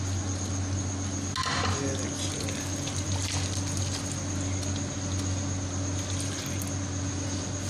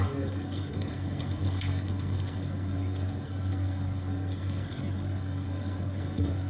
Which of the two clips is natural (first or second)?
first